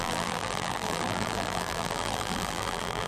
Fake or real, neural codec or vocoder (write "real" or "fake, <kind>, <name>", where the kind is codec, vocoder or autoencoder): fake, vocoder, BigVGAN v2